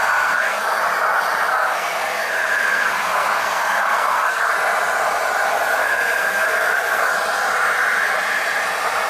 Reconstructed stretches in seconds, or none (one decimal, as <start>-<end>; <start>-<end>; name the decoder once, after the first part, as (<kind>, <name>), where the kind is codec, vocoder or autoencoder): 0.0-0.8 (codec, SNAC); 1.5-4.5; 5.8-7.1